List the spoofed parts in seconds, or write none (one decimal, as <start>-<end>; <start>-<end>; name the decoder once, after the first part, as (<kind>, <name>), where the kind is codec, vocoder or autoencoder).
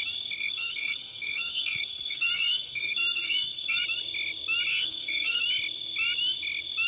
0.4-3.8 (codec, SNAC); 4.7-5.4